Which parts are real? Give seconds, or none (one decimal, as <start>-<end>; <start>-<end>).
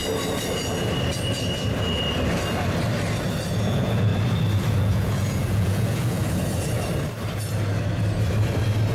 0.0-3.6; 4.1-4.7; 6.2-8.9